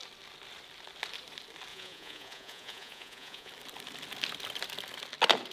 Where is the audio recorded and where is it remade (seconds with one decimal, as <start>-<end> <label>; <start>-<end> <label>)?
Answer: 0.0-1.7 recorded; 1.7-3.5 remade; 3.5-5.5 recorded